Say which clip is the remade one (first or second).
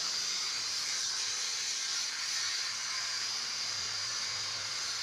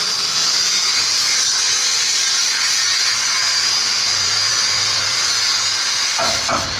first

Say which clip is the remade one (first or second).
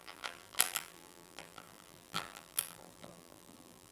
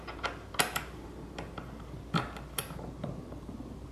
first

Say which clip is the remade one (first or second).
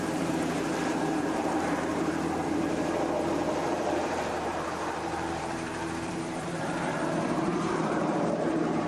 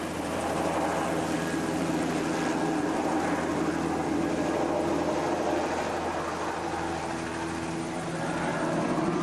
first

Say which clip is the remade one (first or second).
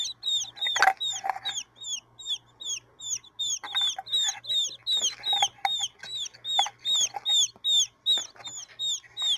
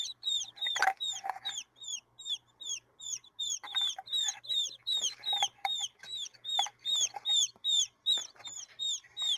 second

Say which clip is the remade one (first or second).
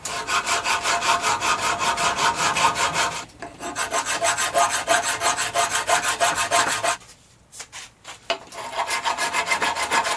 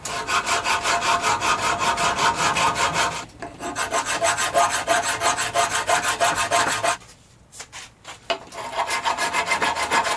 first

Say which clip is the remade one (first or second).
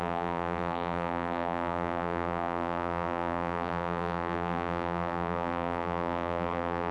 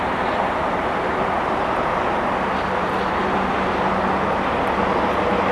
first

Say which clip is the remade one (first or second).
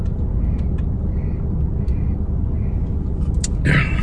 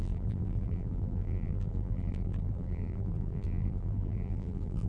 second